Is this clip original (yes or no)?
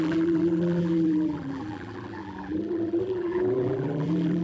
no